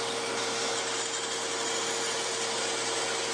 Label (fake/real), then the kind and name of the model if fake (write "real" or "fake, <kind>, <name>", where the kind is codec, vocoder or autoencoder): real